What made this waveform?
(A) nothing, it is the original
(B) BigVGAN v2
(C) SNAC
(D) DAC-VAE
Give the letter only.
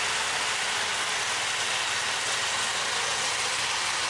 A